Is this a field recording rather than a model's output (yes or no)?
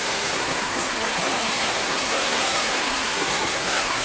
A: no